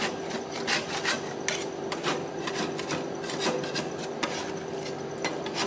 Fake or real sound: real